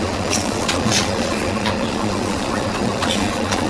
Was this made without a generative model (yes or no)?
no